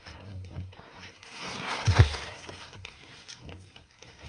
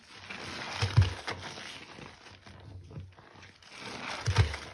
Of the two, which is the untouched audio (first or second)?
second